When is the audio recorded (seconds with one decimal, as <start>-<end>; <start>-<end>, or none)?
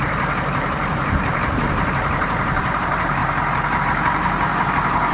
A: 3.2-3.8